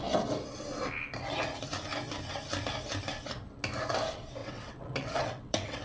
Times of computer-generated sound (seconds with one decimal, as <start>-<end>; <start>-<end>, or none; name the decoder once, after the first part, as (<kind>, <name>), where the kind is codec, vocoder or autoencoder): 4.4-5.8 (vocoder, WaveNeXt)